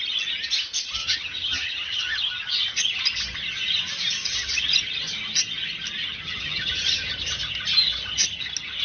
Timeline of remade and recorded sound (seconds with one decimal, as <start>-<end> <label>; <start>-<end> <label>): 0.0-1.0 recorded; 1.0-2.2 remade; 2.2-6.0 recorded; 6.0-6.7 remade; 6.7-8.8 recorded